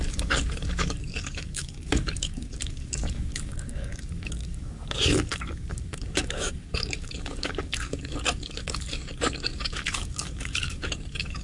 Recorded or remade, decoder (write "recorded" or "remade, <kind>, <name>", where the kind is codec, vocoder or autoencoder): remade, codec, DAC